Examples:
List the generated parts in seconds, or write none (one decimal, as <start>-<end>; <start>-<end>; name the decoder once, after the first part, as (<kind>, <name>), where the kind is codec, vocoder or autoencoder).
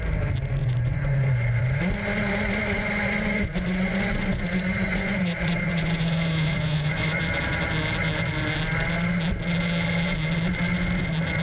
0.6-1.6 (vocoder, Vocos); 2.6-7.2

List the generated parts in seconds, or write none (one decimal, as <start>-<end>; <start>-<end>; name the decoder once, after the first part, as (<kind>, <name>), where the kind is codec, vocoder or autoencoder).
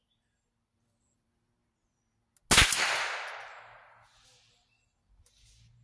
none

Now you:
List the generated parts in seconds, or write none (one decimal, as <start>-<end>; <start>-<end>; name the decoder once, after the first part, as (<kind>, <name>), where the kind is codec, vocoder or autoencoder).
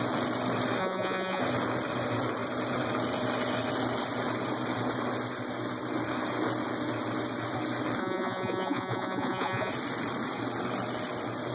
0.8-1.4 (vocoder, Vocos); 8.0-9.7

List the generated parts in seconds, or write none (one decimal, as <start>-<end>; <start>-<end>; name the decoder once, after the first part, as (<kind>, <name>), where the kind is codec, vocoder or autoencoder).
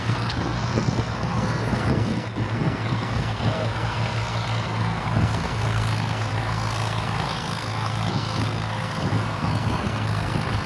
0.0-10.7 (codec, SNAC)